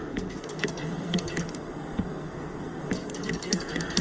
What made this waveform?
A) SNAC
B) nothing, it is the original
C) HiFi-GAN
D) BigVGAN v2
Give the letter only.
A